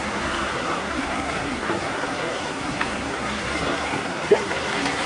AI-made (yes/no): yes